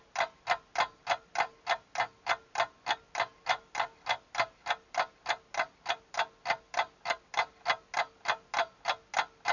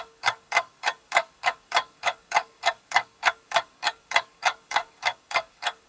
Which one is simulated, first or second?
second